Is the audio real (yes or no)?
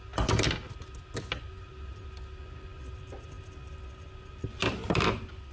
yes